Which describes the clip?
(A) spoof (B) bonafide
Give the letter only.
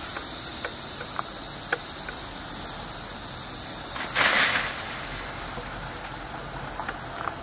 B